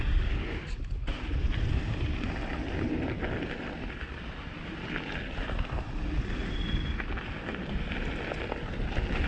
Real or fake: real